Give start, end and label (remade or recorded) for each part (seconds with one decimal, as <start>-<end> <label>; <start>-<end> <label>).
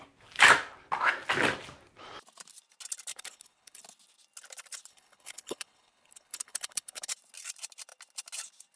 0.0-3.1 recorded; 3.1-3.8 remade; 3.8-4.9 recorded; 4.9-7.1 remade; 7.1-8.8 recorded